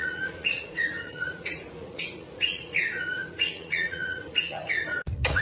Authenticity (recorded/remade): remade